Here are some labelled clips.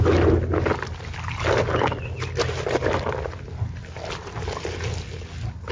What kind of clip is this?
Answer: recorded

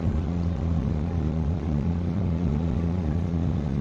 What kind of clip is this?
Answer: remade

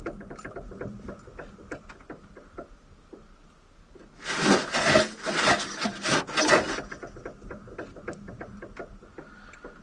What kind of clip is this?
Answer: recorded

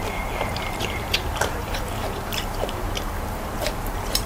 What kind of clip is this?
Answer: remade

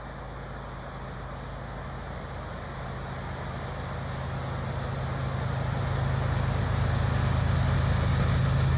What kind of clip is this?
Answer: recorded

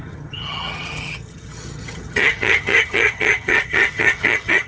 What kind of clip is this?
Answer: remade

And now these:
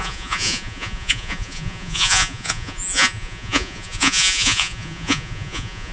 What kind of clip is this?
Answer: remade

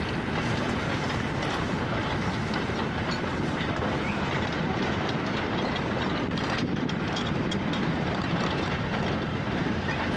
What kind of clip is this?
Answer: remade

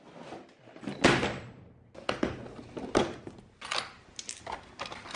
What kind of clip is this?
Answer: recorded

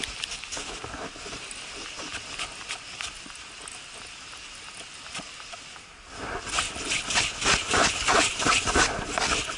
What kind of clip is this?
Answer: recorded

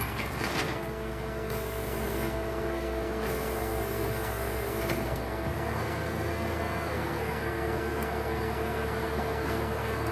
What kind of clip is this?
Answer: remade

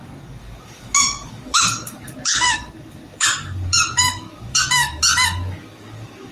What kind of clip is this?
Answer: remade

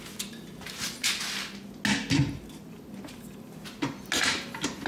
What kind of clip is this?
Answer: recorded